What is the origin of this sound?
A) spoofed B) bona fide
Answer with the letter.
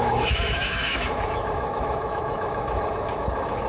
A